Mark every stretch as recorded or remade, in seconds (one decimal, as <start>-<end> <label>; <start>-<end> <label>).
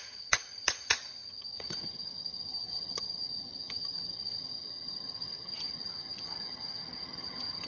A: 0.0-7.7 remade